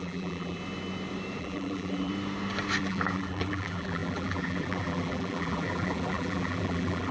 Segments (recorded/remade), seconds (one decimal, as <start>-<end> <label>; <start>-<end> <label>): 0.0-0.6 remade; 0.6-1.4 recorded; 1.4-2.1 remade; 2.1-2.8 recorded; 2.8-7.1 remade